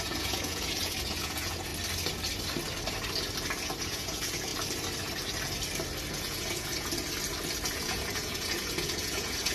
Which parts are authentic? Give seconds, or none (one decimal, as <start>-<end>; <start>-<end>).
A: 1.7-3.8; 4.5-6.1; 6.9-7.7

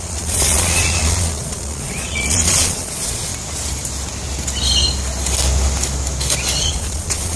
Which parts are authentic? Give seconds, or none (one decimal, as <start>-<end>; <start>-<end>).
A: 3.3-6.6